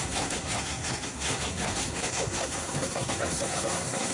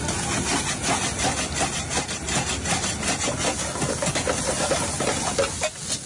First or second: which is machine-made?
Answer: first